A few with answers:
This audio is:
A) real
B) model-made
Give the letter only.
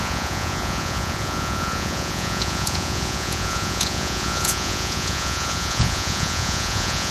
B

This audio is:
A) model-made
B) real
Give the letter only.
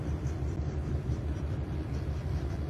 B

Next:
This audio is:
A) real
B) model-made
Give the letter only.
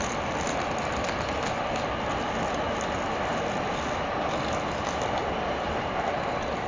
A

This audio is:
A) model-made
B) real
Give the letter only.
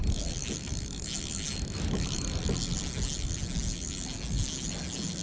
B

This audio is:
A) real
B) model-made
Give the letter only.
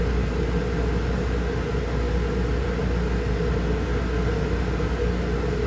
A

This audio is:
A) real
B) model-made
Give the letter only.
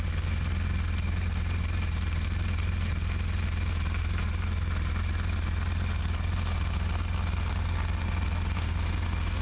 A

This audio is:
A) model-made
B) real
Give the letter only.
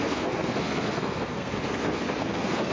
A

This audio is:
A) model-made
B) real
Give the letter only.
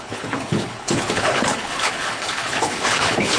A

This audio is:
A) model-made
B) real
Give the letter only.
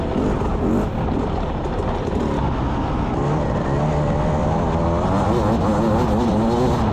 B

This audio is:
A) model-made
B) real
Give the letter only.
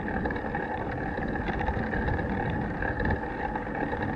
B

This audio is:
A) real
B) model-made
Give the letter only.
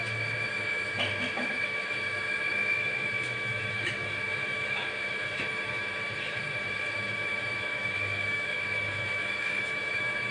B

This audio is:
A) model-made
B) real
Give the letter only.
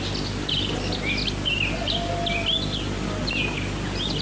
B